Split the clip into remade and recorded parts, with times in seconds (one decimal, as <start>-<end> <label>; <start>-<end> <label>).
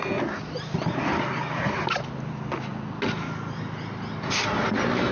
0.0-5.1 recorded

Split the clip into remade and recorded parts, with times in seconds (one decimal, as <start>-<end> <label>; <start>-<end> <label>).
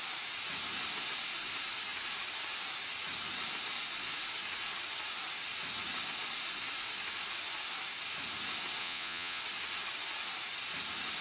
0.0-8.8 recorded; 8.8-9.4 remade; 9.4-11.2 recorded